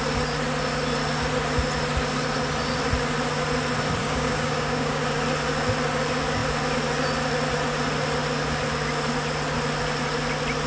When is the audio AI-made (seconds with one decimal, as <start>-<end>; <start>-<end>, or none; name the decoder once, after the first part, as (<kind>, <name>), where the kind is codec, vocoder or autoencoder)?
4.0-5.0 (codec, DAC)